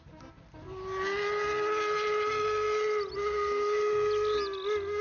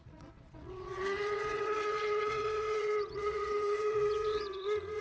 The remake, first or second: second